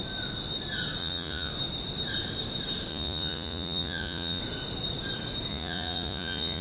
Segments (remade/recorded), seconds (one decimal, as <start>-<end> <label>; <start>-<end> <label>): 0.0-1.0 recorded; 1.0-1.5 remade; 1.5-2.9 recorded; 2.9-4.4 remade; 4.4-5.5 recorded; 5.5-6.6 remade